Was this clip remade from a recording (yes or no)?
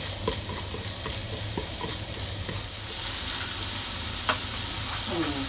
no